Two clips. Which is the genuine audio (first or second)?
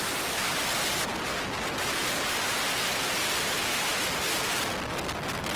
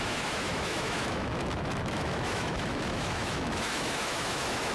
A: first